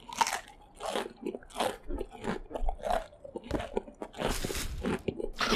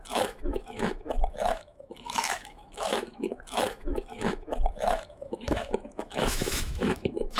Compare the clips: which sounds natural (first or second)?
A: first